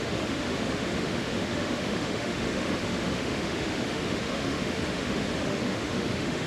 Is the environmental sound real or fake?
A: fake